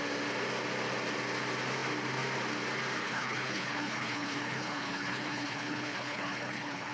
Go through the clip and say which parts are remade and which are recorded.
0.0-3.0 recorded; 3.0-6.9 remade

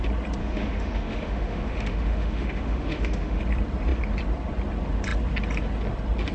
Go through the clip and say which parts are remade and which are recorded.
0.0-0.4 recorded; 0.4-3.4 remade; 3.4-6.3 recorded

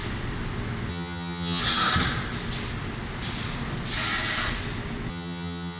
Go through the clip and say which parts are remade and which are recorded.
0.0-0.9 recorded; 0.9-1.6 remade; 1.6-5.1 recorded; 5.1-5.8 remade

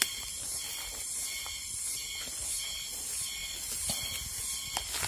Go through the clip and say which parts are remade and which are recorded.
0.0-5.1 recorded

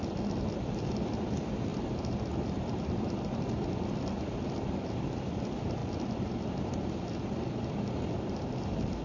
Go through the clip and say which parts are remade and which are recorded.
0.0-1.7 remade; 1.7-2.3 recorded; 2.3-5.8 remade; 5.8-7.5 recorded; 7.5-9.0 remade

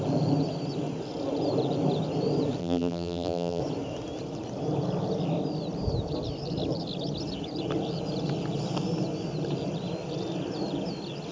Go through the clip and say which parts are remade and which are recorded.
0.0-2.6 recorded; 2.6-3.6 remade; 3.6-11.3 recorded

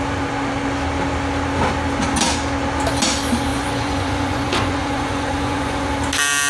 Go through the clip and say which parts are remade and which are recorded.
0.0-3.5 recorded; 3.5-5.9 remade; 5.9-6.5 recorded